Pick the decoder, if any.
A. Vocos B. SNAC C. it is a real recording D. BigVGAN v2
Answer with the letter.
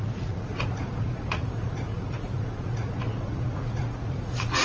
A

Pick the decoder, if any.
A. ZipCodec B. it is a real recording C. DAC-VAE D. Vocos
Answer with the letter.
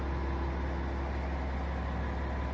B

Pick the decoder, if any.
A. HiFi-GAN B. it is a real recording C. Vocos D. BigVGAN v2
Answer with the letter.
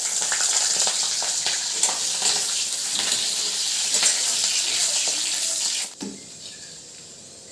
B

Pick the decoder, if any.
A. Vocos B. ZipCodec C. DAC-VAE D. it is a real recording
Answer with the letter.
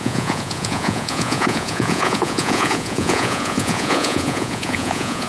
A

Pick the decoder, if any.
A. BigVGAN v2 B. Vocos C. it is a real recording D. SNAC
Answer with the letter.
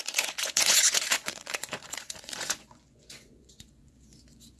B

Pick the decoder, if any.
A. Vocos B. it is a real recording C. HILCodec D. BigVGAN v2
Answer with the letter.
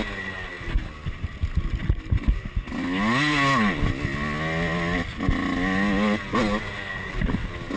B